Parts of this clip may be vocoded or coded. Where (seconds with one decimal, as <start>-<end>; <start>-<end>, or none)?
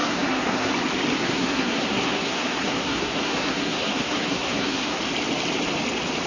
0.0-0.7; 1.2-5.0